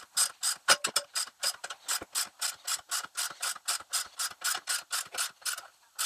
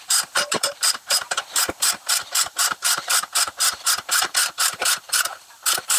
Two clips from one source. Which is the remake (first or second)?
second